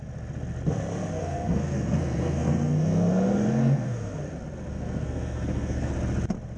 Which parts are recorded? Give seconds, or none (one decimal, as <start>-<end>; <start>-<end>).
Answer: 0.0-1.2; 4.2-4.7; 5.9-6.6